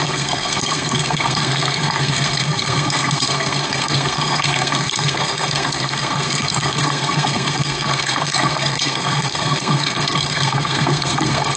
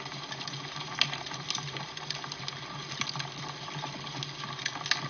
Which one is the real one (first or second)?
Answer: second